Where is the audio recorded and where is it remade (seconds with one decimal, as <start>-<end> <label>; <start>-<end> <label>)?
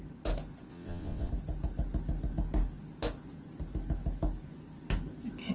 0.0-0.7 recorded; 0.7-1.3 remade; 1.3-5.5 recorded